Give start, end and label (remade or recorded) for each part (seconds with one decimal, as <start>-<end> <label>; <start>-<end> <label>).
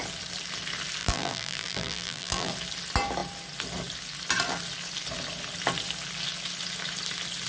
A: 0.0-1.0 recorded; 1.0-2.5 remade; 2.5-7.5 recorded